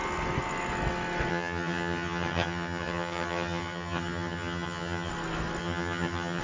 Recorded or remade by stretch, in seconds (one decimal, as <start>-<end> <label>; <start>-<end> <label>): 0.0-1.3 recorded; 1.3-5.1 remade; 5.1-5.6 recorded; 5.6-6.4 remade